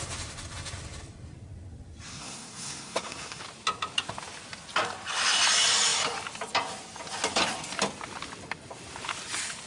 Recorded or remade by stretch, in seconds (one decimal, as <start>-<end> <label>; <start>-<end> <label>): 0.0-2.1 recorded; 2.1-3.4 remade; 3.4-9.7 recorded